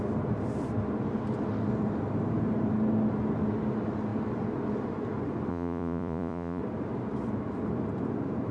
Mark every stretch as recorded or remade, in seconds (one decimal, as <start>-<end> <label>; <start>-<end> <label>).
0.0-5.5 recorded; 5.5-6.6 remade; 6.6-8.5 recorded